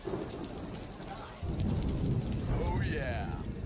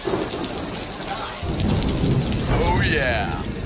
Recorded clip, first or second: second